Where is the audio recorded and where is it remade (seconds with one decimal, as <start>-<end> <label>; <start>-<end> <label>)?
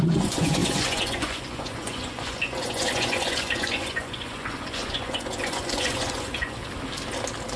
0.0-6.6 remade; 6.6-7.6 recorded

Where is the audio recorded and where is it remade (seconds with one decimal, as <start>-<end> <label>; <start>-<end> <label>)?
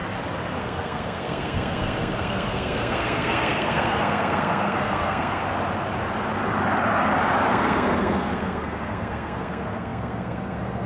0.0-0.6 recorded; 0.6-5.4 remade; 5.4-7.5 recorded; 7.5-10.9 remade